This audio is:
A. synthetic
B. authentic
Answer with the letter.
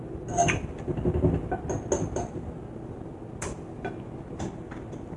B